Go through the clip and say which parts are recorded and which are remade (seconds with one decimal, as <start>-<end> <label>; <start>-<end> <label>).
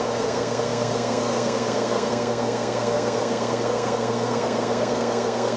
0.0-5.6 remade